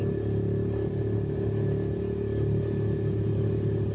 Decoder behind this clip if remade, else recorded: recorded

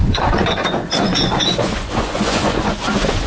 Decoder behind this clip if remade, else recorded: remade, vocoder, Vocos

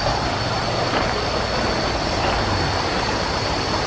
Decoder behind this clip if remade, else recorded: recorded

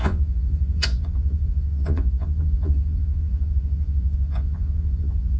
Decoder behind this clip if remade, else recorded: remade, vocoder, Vocos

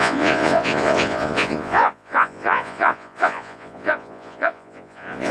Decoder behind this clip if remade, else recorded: remade, vocoder, Vocos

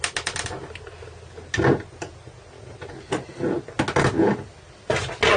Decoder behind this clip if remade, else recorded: recorded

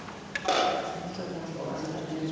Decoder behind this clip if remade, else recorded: recorded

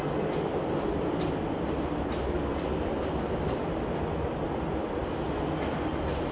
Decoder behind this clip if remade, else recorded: recorded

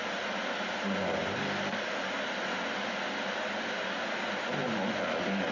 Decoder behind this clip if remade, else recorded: recorded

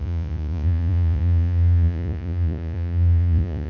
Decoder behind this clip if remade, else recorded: remade, vocoder, Vocos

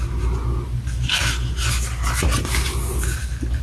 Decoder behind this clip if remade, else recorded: recorded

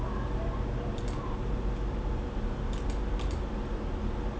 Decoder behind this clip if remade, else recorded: recorded